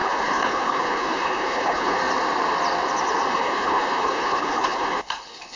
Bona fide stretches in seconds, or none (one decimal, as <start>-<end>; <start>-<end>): 2.0-3.3